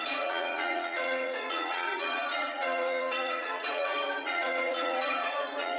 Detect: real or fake fake